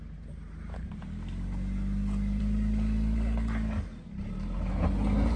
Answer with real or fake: real